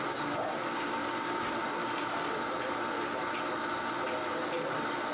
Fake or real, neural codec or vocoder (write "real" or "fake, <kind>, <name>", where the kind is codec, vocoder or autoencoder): real